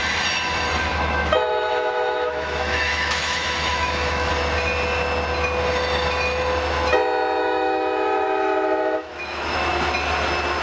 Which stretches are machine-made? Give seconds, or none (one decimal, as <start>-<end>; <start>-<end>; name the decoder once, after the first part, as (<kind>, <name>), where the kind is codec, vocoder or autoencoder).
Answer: 0.9-4.3 (autoencoder, DAC-VAE); 7.4-9.7